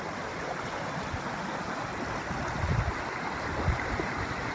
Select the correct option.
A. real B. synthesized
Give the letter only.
A